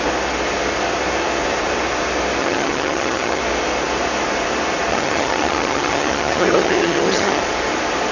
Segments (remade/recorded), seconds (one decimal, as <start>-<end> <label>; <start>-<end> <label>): 0.0-2.4 recorded; 2.4-3.4 remade; 3.4-4.9 recorded; 4.9-7.4 remade; 7.4-8.1 recorded